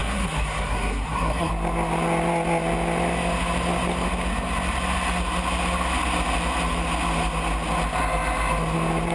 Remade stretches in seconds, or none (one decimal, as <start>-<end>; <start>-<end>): 0.0-1.5